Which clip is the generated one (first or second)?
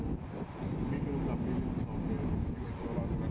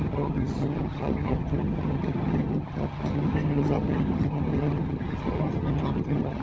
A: second